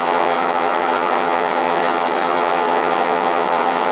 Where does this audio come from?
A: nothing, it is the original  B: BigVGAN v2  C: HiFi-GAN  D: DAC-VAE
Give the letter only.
C